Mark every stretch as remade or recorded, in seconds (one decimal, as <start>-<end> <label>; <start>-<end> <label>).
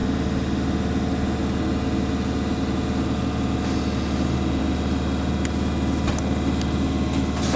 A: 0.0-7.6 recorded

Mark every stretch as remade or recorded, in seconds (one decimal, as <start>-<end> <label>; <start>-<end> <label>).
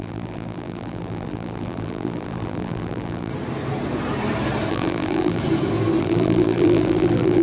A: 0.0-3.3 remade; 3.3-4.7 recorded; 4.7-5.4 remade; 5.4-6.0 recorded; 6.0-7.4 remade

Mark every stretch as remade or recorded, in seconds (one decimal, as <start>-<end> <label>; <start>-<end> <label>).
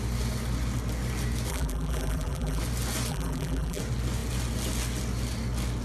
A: 0.0-1.5 recorded; 1.5-2.6 remade; 2.6-3.1 recorded; 3.1-3.8 remade; 3.8-5.8 recorded